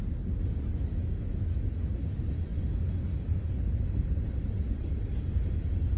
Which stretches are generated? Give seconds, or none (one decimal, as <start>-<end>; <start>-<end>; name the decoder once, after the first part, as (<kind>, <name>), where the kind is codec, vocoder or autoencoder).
0.7-1.7 (autoencoder, DAC-VAE)